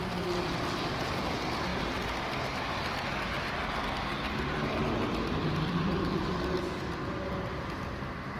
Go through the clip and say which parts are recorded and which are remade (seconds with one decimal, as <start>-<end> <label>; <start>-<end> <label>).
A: 0.0-8.4 recorded